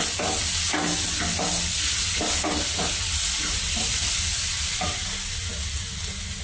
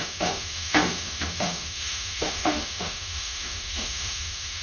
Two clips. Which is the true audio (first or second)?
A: first